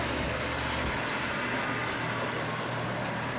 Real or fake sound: real